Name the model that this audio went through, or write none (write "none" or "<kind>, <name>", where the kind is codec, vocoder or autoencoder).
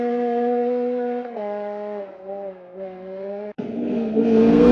codec, SNAC